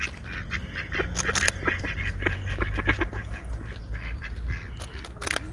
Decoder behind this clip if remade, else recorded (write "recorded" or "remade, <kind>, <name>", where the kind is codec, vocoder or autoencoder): recorded